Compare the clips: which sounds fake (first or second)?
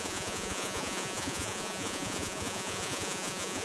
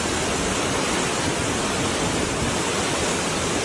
first